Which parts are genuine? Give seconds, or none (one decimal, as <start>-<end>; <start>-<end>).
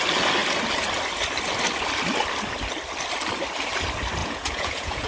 0.0-4.2